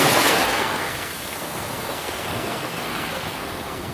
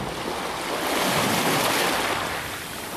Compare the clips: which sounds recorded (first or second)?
second